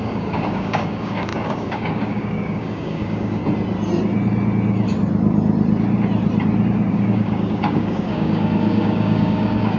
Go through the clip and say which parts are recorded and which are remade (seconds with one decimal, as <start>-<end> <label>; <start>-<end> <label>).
0.0-3.4 remade; 3.4-6.9 recorded; 6.9-9.8 remade